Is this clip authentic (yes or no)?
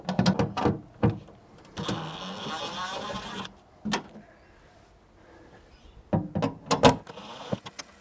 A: yes